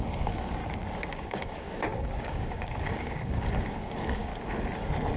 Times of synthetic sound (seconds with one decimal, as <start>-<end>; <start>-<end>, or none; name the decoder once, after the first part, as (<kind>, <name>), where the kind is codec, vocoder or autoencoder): 0.0-0.6 (codec, DAC); 1.1-4.3